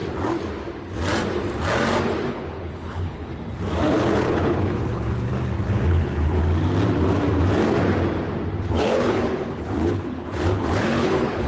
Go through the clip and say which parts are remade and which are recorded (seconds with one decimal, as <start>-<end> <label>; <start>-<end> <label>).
0.0-2.3 recorded; 2.3-3.3 remade; 3.3-3.8 recorded; 3.8-5.3 remade; 5.3-5.9 recorded; 5.9-6.4 remade; 6.4-8.7 recorded; 8.7-11.5 remade